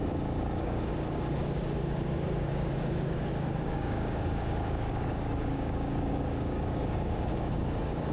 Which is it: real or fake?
fake